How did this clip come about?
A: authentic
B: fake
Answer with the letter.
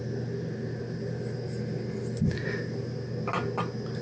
A